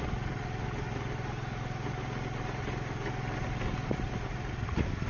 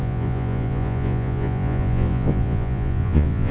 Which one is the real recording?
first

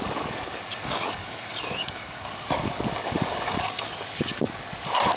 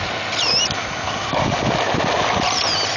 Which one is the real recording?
second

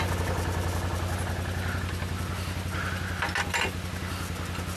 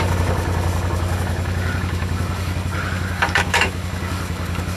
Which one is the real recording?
first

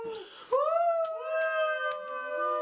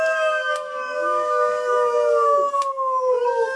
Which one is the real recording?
first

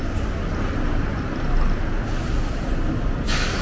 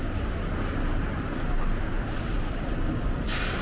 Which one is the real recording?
first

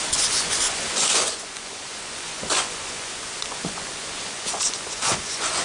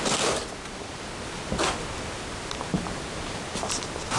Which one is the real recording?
second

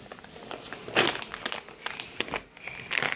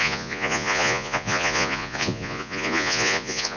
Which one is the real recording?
first